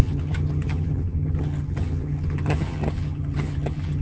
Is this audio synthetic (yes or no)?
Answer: yes